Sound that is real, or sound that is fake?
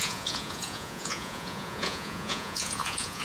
fake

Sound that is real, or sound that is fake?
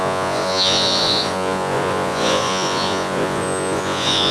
fake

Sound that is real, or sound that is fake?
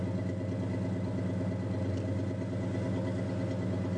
real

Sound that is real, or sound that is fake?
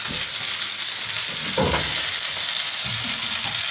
real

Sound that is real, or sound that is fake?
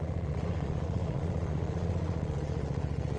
fake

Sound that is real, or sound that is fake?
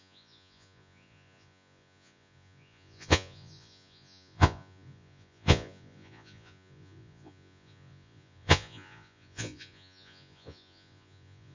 fake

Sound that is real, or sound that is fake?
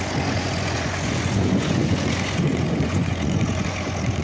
fake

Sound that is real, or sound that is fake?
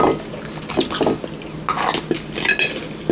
real